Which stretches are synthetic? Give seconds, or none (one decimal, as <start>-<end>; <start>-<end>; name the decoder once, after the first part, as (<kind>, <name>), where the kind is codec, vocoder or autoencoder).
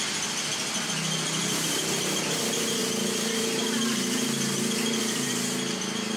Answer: 2.8-5.3 (vocoder, BigVGAN v2)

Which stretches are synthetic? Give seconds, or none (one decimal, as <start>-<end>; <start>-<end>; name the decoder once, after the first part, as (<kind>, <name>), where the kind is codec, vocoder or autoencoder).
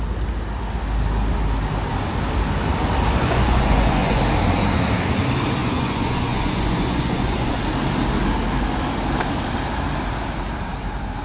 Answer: 3.2-4.2 (vocoder, Vocos); 5.6-7.6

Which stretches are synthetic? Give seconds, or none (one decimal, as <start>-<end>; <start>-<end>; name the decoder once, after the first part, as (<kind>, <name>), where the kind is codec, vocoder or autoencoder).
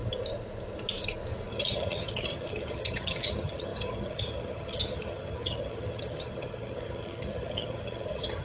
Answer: 1.5-8.4 (vocoder, HiFi-GAN)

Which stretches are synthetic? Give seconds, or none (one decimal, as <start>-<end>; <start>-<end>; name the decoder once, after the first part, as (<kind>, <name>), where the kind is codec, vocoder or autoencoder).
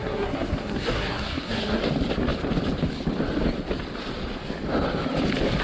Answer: 0.0-1.8 (codec, SNAC)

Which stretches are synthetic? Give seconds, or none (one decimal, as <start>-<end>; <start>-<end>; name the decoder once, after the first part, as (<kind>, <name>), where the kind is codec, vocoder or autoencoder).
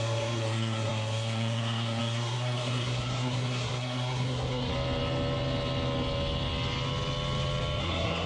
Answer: 0.0-4.7 (codec, SNAC); 7.8-8.3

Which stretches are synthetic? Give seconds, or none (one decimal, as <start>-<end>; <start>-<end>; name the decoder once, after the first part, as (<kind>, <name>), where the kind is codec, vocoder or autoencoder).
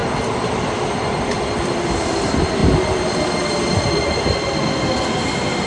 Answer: none